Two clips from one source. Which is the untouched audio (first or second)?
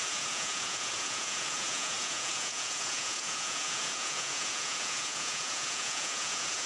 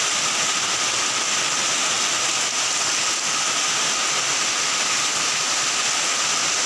second